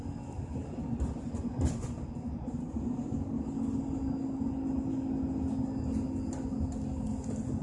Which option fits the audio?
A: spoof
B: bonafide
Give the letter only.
B